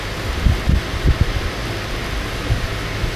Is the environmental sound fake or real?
real